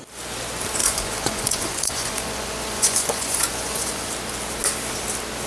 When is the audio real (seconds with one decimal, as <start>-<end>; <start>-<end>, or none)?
0.0-0.8; 4.1-5.5